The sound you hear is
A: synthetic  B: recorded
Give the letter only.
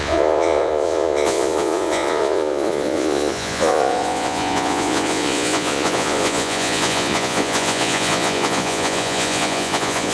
A